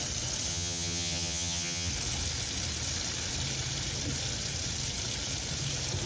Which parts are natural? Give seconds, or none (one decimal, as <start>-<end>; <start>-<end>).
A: 0.0-0.5; 1.9-6.1

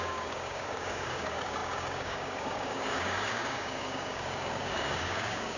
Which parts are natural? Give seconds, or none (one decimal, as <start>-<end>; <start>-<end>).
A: none

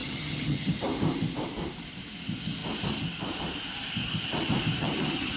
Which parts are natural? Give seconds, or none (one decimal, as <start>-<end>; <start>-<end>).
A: 0.7-4.8